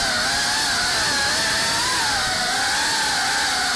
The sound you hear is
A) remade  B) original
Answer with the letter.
B